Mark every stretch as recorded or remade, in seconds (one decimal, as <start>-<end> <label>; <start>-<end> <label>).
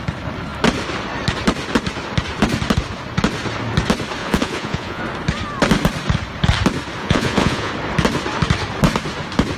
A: 0.0-4.2 recorded; 4.2-5.0 remade; 5.0-7.0 recorded; 7.0-7.7 remade; 7.7-9.6 recorded